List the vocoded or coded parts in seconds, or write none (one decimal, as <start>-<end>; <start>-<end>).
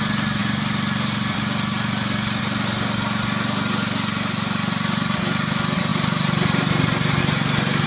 none